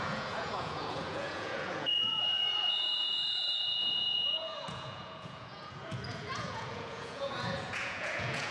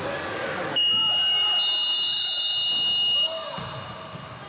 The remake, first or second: first